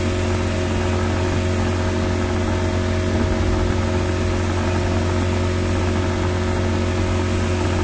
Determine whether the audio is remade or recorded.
recorded